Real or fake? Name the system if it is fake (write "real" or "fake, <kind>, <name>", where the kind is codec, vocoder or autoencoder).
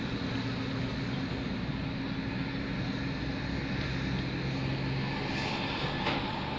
real